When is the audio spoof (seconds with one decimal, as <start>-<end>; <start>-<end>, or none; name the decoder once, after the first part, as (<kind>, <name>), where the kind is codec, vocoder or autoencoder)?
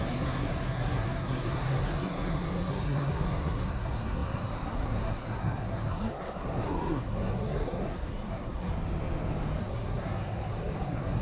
0.0-8.7 (codec, SNAC); 9.6-11.2